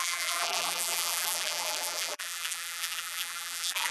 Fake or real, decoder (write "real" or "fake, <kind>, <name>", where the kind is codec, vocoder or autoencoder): fake, vocoder, BigVGAN v2